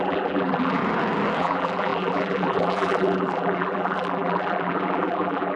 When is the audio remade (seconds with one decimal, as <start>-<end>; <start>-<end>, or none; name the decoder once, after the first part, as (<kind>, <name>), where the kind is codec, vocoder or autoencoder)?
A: 0.0-0.8 (vocoder, BigVGAN v2); 1.4-5.6